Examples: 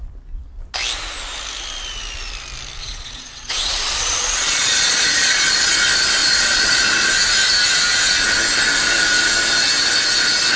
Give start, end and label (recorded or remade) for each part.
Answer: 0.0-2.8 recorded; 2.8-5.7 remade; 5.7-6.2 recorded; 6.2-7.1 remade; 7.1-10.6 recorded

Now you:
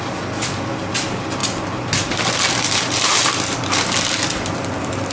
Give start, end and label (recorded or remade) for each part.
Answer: 0.0-5.1 recorded

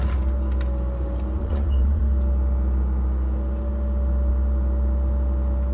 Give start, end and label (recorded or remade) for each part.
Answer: 0.0-1.4 recorded; 1.4-2.0 remade; 2.0-5.7 recorded

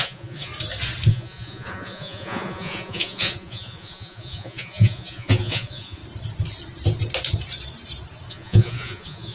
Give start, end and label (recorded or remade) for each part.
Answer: 0.0-0.5 remade; 0.5-1.1 recorded; 1.1-6.0 remade; 6.0-8.3 recorded; 8.3-9.3 remade

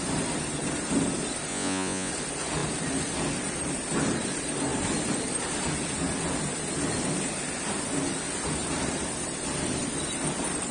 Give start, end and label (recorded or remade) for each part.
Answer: 0.0-1.5 recorded; 1.5-2.1 remade; 2.1-10.7 recorded

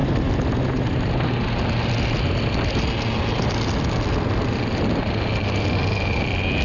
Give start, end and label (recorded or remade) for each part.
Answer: 0.0-6.6 recorded

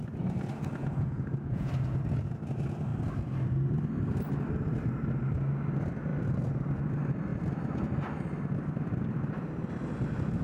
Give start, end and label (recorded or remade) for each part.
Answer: 0.0-0.8 recorded; 0.8-1.7 remade; 1.7-10.4 recorded

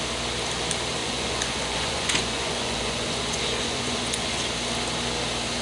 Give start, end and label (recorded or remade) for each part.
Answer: 0.0-1.0 recorded; 1.0-4.4 remade; 4.4-5.6 recorded